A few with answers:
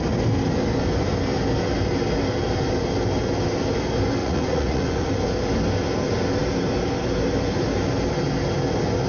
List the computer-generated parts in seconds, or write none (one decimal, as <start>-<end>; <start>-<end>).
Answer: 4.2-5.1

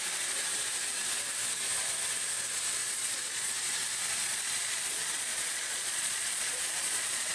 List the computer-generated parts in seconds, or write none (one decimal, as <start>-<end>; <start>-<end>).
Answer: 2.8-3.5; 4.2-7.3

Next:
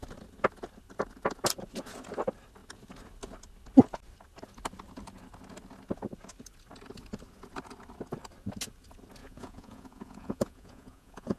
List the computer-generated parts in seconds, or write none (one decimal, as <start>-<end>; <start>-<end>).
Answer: 9.2-11.4